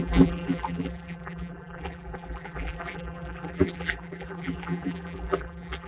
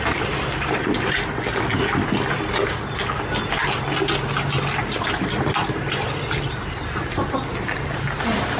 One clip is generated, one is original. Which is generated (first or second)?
first